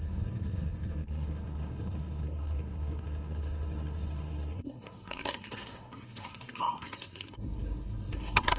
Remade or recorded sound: remade